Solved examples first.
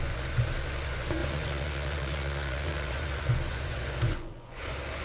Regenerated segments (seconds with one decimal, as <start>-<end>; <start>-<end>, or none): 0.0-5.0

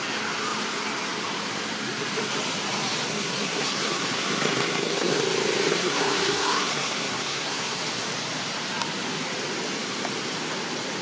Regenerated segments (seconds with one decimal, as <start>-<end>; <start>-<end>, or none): 3.1-5.2; 5.7-7.8

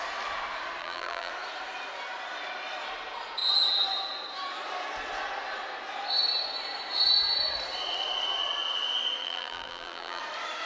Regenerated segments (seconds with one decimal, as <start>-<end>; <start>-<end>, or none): 0.8-1.3; 9.2-10.2

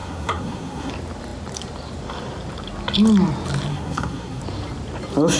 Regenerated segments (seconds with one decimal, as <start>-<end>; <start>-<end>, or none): 0.0-0.9; 3.7-4.4